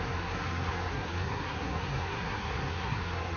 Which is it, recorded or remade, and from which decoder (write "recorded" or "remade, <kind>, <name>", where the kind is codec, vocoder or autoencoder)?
remade, codec, SNAC